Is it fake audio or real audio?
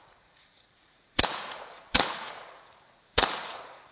fake